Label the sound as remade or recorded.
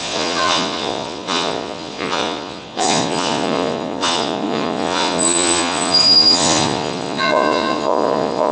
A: remade